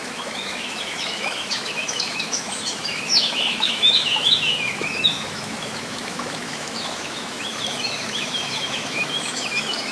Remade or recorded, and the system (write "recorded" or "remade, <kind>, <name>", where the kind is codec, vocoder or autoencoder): remade, autoencoder, DAC-VAE